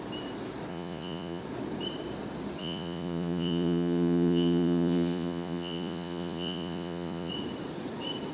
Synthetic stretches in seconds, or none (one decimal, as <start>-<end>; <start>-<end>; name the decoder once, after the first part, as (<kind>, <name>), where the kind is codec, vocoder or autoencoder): 0.7-1.4 (vocoder, Vocos); 2.6-7.3